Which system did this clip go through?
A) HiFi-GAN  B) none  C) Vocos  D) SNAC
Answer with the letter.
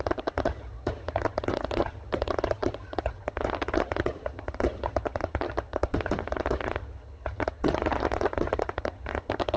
A